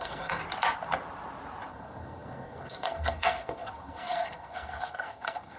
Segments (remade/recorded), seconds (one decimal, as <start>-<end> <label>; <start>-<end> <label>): 0.0-0.4 remade; 0.4-1.7 recorded; 1.7-5.6 remade